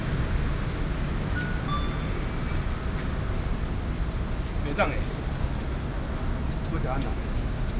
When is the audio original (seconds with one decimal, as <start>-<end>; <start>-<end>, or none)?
0.0-7.8